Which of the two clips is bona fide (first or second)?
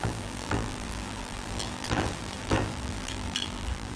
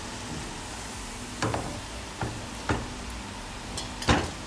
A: second